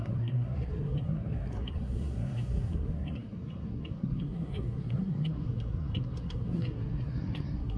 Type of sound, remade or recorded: remade